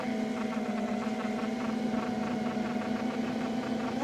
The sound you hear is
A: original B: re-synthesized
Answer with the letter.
A